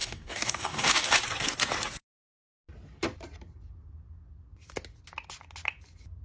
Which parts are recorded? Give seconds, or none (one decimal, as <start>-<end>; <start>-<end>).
1.1-6.2